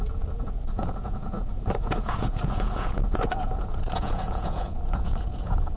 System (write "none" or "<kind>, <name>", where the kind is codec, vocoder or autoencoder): vocoder, Vocos